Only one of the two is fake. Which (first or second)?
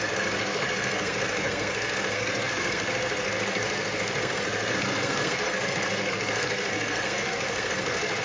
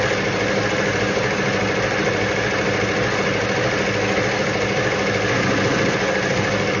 first